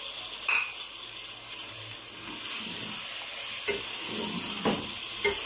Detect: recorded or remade recorded